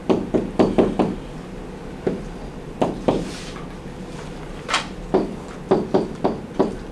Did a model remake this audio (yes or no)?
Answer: no